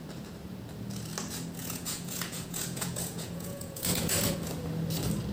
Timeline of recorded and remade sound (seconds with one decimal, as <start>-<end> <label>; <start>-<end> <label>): 0.0-1.6 recorded; 1.6-4.4 remade; 4.4-5.3 recorded